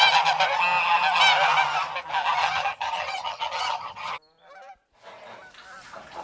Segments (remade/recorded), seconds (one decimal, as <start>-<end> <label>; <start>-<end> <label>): 0.0-2.4 recorded; 2.4-4.1 remade; 4.1-6.2 recorded

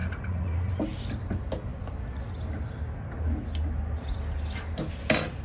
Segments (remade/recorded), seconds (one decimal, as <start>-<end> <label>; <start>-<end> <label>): 0.0-0.8 remade; 0.8-5.4 recorded

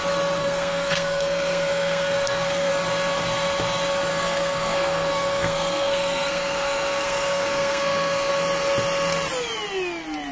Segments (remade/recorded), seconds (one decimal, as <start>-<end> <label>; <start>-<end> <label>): 0.0-0.4 recorded; 0.4-2.7 remade; 2.7-4.1 recorded; 4.1-8.3 remade; 8.3-10.3 recorded

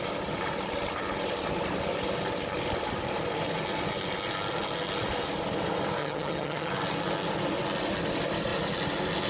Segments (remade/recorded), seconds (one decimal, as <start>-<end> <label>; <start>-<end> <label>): 0.0-6.0 recorded; 6.0-6.7 remade; 6.7-9.3 recorded